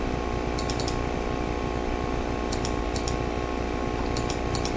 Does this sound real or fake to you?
real